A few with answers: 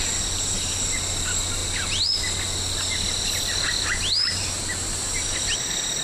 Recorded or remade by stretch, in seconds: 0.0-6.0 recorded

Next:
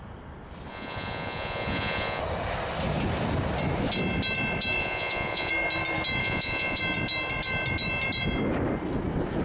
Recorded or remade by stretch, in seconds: 0.0-0.7 recorded; 0.7-2.2 remade; 2.2-4.8 recorded; 4.8-5.5 remade; 5.5-6.2 recorded; 6.2-6.8 remade; 6.8-9.4 recorded

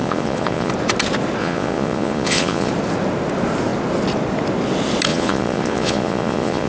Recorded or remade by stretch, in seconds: 0.0-0.7 remade; 0.7-1.4 recorded; 1.4-2.7 remade; 2.7-5.1 recorded; 5.1-6.7 remade

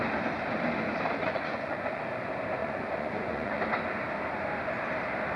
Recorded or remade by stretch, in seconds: 0.0-1.2 recorded; 1.2-2.0 remade; 2.0-2.6 recorded; 2.6-3.6 remade; 3.6-5.4 recorded

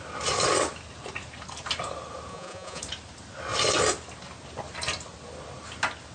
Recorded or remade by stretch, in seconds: 0.0-2.3 recorded; 2.3-2.8 remade; 2.8-6.1 recorded

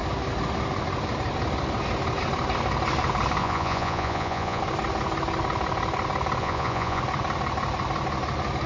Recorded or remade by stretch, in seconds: 0.0-3.4 recorded; 3.4-4.6 remade; 4.6-6.4 recorded; 6.4-7.0 remade; 7.0-8.7 recorded